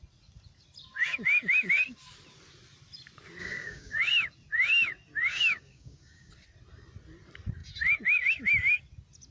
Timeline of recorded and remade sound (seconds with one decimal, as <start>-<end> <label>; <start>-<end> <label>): 0.0-3.4 recorded; 3.4-4.0 remade; 4.0-5.3 recorded; 5.3-6.3 remade; 6.3-9.3 recorded